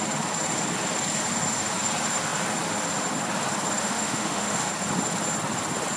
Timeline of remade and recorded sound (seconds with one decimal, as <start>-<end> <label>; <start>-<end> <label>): 0.0-3.8 recorded; 3.8-4.7 remade; 4.7-6.0 recorded